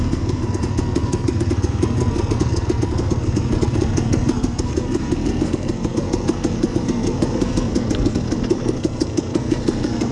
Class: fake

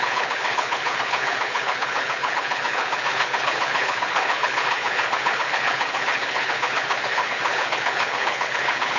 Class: fake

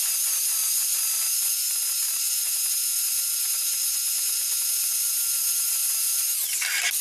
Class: real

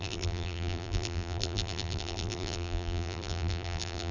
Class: fake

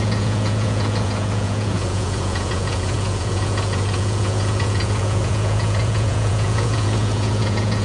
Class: fake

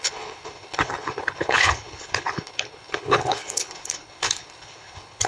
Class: fake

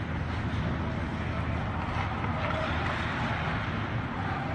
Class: real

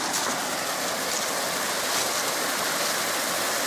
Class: real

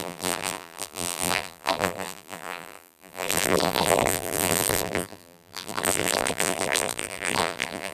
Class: fake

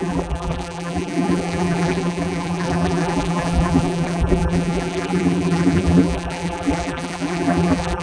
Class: fake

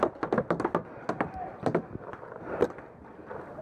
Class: real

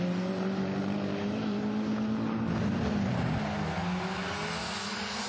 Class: real